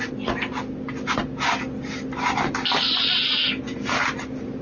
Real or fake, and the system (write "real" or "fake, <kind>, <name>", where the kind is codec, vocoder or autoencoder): real